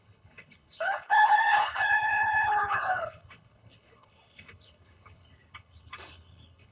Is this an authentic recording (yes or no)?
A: no